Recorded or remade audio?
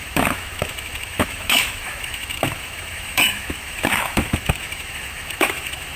remade